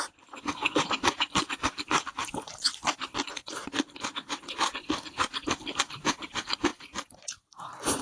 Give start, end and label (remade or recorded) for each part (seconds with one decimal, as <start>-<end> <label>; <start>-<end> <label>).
0.0-8.0 recorded